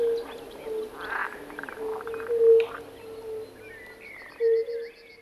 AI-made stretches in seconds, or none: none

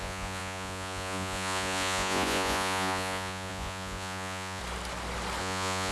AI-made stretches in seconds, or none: 0.0-4.6 (vocoder, Vocos); 5.4-5.9

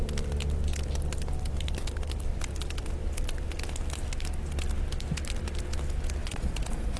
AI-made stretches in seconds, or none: 6.2-7.0 (vocoder, Vocos)